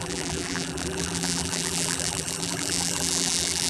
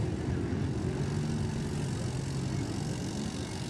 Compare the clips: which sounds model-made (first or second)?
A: first